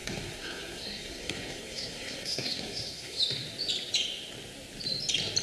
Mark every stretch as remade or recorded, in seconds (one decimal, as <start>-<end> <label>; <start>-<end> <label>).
0.0-3.2 remade; 3.2-5.4 recorded

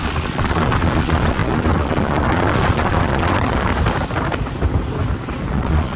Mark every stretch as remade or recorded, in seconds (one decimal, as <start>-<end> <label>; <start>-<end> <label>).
0.0-3.7 remade; 3.7-5.5 recorded; 5.5-6.0 remade